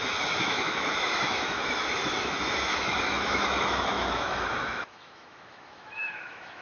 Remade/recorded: remade